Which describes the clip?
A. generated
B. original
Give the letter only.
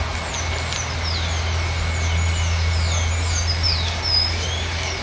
B